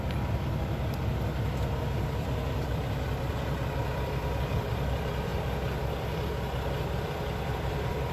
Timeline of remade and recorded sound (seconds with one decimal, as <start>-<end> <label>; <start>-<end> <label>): 0.0-8.1 remade